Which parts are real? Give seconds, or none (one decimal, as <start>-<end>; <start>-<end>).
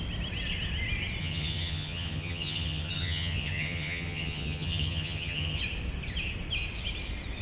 0.0-1.2; 5.6-7.4